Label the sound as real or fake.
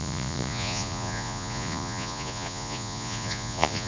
fake